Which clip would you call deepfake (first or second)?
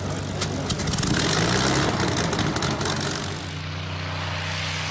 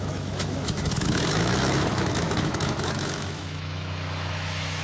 second